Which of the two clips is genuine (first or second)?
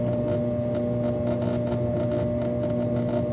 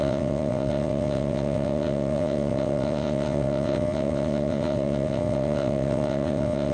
first